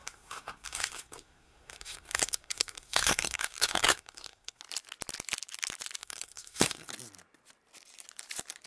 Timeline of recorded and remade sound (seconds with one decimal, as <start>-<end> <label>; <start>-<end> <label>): 0.0-4.6 remade; 4.6-6.0 recorded; 6.0-6.9 remade; 6.9-8.7 recorded